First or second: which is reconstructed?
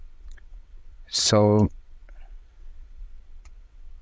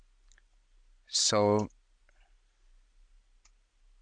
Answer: first